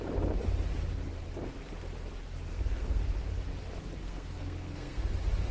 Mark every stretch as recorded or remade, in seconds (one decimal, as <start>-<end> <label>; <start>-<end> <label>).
0.0-2.5 recorded; 2.5-3.0 remade; 3.0-4.0 recorded; 4.0-5.1 remade; 5.1-5.5 recorded